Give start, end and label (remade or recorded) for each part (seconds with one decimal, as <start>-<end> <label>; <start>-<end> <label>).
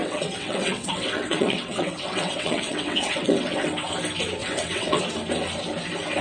0.0-3.7 remade; 3.7-4.4 recorded; 4.4-5.0 remade; 5.0-6.2 recorded